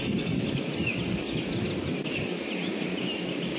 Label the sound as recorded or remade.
recorded